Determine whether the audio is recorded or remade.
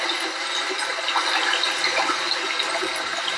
recorded